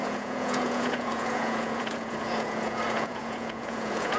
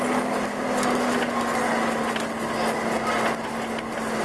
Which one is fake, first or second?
first